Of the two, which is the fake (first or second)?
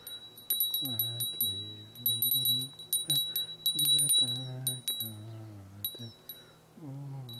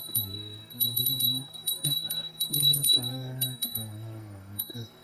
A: second